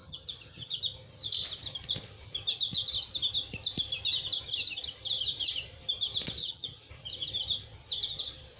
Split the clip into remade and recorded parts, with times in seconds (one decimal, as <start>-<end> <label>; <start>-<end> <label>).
0.0-0.8 remade; 0.8-6.4 recorded; 6.4-6.9 remade; 6.9-8.6 recorded